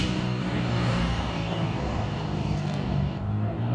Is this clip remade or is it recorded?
remade